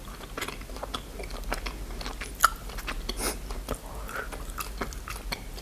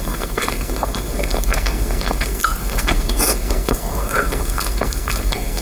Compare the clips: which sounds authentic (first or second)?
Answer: first